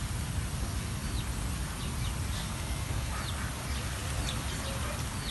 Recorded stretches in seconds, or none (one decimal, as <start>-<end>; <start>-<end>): 0.0-2.4; 3.1-5.3